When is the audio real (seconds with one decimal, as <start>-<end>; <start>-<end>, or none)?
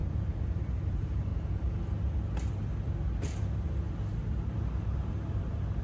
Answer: 0.0-0.6; 1.3-4.3